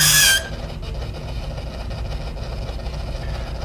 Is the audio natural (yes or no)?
yes